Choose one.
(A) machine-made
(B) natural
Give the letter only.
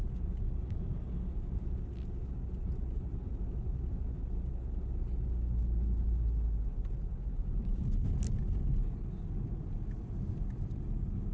B